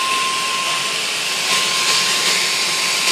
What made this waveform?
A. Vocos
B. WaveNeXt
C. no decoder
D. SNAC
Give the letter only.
C